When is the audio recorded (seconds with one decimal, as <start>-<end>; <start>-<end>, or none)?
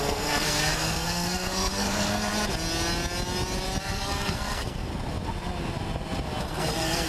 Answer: 2.3-3.8; 4.9-6.4